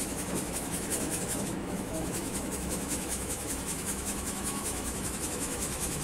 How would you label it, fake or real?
fake